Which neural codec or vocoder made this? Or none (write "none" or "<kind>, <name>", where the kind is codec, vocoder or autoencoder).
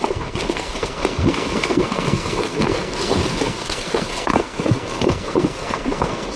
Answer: codec, SNAC